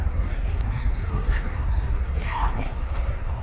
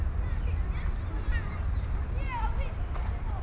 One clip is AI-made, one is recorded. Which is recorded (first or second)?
second